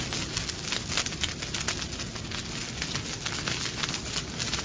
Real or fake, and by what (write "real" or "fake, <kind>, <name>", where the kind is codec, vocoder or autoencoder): real